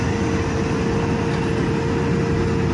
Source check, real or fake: real